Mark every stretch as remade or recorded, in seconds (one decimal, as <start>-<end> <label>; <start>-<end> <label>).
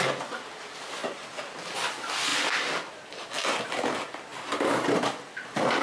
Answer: 0.0-5.8 recorded